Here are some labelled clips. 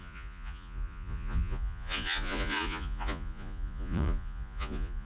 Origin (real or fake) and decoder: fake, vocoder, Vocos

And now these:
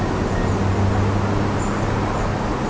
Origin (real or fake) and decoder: real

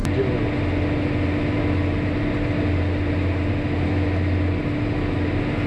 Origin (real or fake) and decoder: real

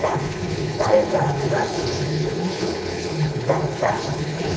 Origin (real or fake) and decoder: fake, codec, HILCodec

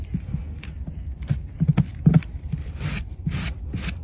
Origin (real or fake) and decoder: real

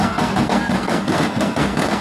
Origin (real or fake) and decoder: fake, codec, SNAC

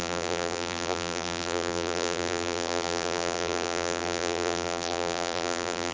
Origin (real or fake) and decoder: fake, vocoder, BigVGAN v2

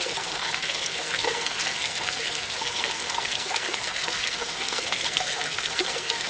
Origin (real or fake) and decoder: fake, codec, SNAC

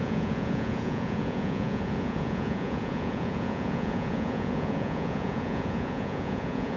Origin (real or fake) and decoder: fake, vocoder, Vocos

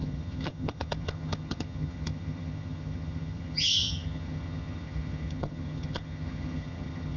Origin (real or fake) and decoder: fake, vocoder, HiFi-GAN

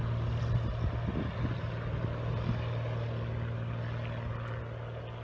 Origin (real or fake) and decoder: real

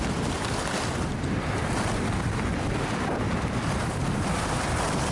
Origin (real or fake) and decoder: real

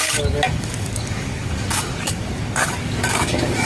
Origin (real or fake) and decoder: fake, codec, DAC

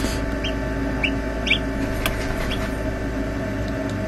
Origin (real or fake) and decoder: real